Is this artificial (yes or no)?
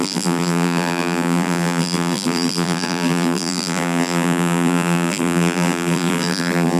yes